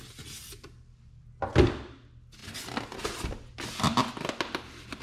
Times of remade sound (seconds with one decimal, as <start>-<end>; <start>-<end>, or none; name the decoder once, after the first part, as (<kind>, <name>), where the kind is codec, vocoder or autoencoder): none